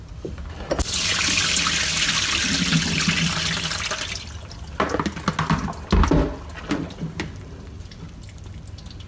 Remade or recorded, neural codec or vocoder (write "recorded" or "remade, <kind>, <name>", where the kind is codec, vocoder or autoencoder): recorded